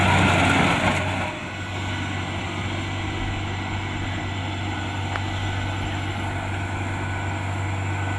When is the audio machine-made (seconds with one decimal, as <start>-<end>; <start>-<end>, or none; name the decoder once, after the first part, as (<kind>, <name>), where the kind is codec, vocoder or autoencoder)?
none